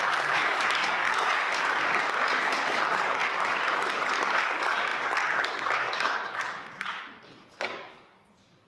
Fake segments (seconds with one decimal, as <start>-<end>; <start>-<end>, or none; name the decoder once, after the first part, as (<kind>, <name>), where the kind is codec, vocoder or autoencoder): 0.0-8.7 (codec, DAC)